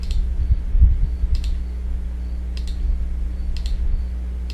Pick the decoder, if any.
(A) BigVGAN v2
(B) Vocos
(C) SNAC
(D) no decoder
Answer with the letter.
D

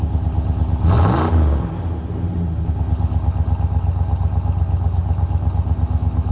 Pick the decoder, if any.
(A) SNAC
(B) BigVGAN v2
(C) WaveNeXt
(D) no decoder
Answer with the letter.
D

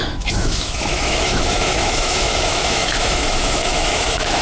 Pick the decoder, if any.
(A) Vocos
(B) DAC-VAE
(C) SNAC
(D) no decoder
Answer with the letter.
B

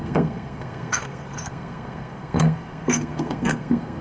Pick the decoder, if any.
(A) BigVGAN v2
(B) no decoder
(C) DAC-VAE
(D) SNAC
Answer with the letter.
D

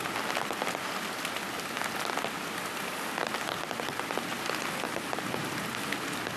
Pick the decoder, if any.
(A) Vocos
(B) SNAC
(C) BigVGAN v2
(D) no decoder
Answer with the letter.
D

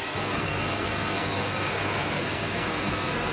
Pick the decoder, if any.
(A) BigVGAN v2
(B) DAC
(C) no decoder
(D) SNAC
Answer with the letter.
D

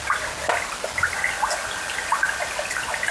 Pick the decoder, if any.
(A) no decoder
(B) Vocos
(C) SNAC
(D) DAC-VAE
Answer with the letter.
A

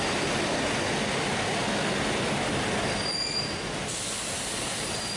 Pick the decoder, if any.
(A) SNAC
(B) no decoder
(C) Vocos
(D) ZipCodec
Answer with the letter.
B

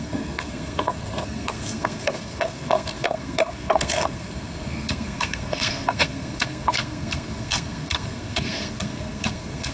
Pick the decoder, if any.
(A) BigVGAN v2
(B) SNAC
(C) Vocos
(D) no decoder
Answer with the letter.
B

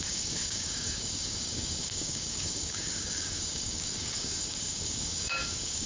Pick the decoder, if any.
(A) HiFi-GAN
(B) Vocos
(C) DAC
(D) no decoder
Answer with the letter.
C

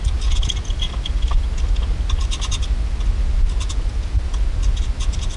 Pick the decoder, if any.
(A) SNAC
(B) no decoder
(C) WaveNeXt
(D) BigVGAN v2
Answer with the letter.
B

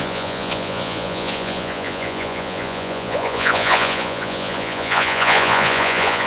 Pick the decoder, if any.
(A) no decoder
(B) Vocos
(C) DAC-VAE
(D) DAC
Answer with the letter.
B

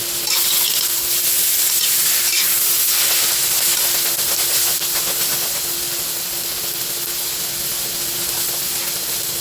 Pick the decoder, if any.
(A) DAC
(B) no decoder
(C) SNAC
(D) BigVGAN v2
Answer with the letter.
B